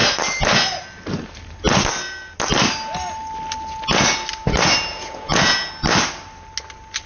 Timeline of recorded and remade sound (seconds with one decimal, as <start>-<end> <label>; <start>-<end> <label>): 0.0-4.9 recorded; 4.9-5.7 remade; 5.7-7.1 recorded